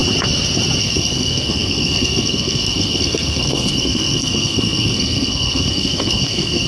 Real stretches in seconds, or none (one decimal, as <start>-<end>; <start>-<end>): 0.0-0.8